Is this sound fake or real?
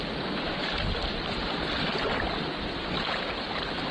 real